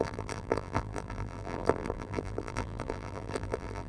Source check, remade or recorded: remade